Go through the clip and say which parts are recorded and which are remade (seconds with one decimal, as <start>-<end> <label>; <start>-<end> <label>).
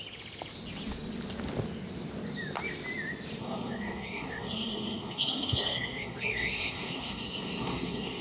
0.0-3.4 recorded; 3.4-8.2 remade